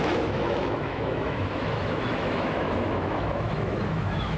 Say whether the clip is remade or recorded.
remade